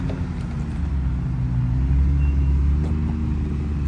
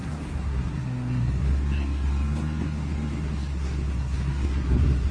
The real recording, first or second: first